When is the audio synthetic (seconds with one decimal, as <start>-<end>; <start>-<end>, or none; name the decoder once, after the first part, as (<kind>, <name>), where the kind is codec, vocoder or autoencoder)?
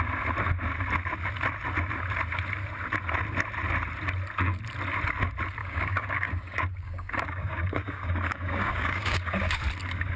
5.6-9.6 (codec, DAC)